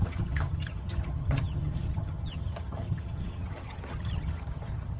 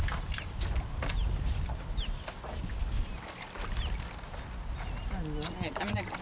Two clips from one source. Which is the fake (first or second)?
first